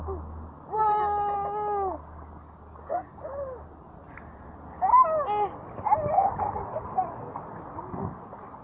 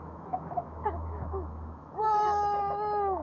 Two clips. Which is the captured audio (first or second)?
first